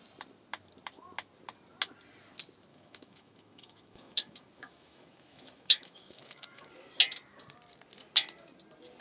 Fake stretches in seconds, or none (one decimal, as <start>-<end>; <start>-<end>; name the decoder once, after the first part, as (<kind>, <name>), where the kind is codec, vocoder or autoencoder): 2.7-6.7 (autoencoder, DAC-VAE)